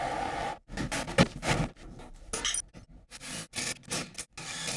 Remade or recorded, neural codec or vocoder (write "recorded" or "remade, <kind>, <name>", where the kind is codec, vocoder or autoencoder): recorded